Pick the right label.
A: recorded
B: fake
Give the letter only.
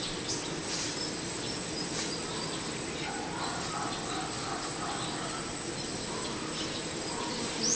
A